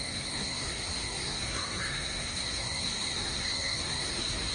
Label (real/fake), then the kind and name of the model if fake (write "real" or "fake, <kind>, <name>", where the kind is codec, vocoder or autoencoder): fake, codec, SNAC